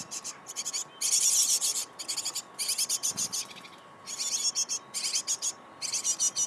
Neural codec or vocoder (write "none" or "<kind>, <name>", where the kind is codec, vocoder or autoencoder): none